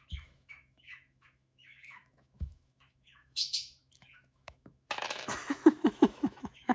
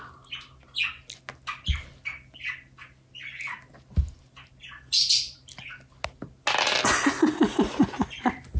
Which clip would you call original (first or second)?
second